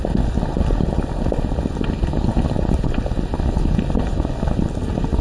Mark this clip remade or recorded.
recorded